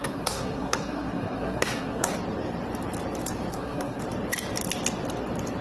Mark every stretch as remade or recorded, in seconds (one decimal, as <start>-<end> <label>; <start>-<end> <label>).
0.0-2.1 remade; 2.1-3.5 recorded; 3.5-4.0 remade; 4.0-5.6 recorded